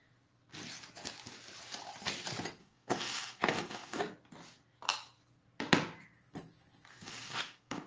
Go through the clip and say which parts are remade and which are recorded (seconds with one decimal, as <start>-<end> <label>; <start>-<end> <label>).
0.0-2.6 recorded; 2.6-4.0 remade; 4.0-6.9 recorded; 6.9-7.9 remade